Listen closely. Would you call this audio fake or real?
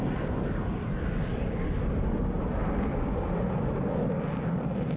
real